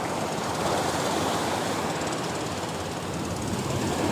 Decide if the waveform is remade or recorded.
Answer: recorded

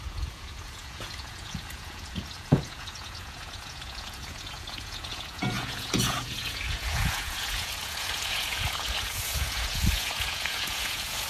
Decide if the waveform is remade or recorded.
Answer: remade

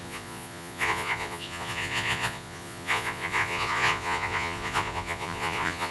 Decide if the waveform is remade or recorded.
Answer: remade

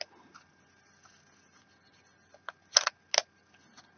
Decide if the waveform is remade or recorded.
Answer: recorded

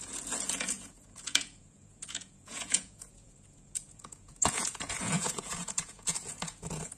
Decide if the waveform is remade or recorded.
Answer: remade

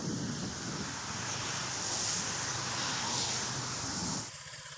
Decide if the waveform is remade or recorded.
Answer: recorded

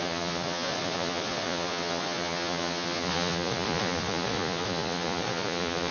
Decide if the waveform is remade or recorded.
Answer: remade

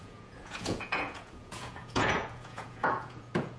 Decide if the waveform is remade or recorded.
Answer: remade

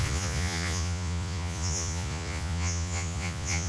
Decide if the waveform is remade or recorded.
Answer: remade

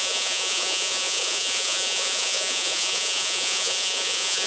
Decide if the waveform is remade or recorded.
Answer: remade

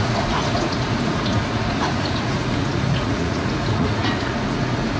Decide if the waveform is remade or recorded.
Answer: remade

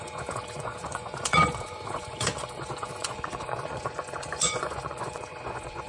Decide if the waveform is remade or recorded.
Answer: remade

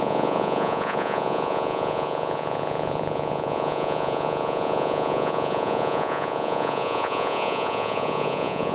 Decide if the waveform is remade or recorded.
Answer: remade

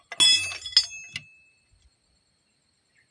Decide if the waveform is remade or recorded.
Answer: recorded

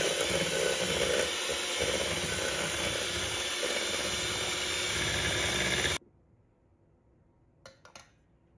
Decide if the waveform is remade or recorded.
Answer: recorded